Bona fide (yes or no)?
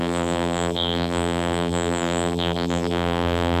no